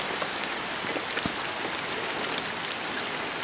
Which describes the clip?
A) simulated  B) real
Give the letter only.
B